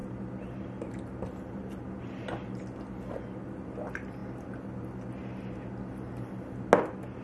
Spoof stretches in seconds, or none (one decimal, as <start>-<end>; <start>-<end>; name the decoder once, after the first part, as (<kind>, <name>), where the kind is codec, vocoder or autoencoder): none

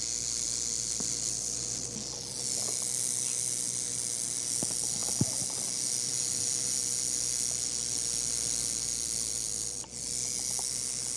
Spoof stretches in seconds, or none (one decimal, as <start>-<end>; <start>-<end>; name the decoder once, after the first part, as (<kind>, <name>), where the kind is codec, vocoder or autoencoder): none

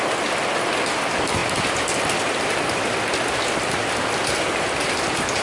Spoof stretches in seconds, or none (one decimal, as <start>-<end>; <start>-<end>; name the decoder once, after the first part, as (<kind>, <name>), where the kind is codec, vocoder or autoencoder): none

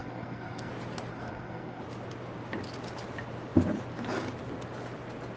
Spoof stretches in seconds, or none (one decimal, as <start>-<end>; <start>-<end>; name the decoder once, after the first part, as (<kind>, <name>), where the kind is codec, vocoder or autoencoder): 0.0-0.7 (codec, SNAC); 1.1-1.8